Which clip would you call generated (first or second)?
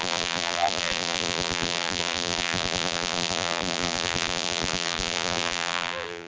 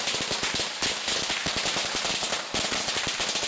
first